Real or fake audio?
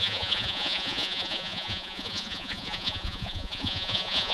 fake